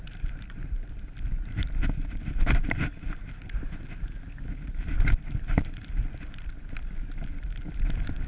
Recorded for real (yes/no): yes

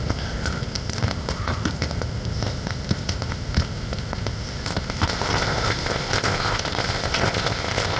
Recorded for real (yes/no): no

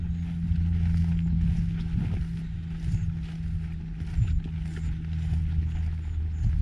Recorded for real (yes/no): yes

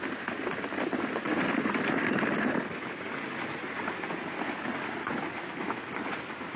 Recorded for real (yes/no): yes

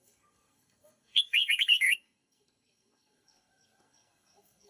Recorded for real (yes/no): no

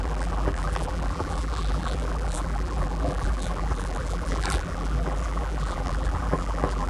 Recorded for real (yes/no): no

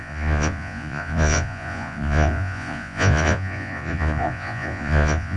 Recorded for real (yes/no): no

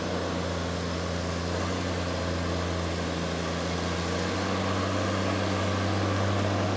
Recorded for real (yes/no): yes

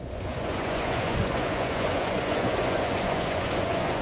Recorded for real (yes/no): no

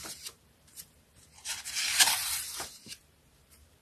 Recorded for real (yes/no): no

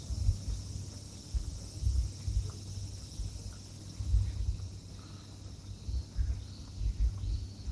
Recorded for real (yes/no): yes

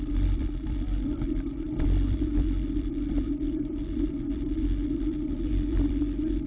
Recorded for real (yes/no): no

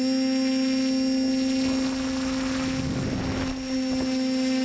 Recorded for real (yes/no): yes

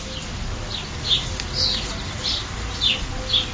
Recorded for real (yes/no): yes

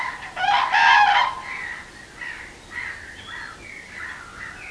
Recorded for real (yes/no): yes